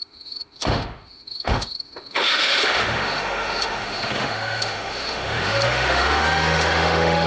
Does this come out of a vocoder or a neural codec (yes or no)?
yes